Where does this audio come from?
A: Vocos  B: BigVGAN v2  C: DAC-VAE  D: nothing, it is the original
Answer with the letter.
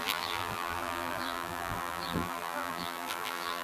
B